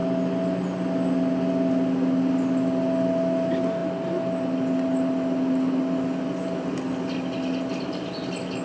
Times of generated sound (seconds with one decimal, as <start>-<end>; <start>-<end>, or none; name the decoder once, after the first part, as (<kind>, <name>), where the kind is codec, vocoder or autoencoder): none